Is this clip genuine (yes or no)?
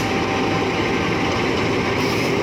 yes